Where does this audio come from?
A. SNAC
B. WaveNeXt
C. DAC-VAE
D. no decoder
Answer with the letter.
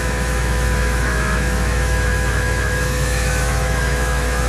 C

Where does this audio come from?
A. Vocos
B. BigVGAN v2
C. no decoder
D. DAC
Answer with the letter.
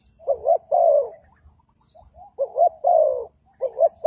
B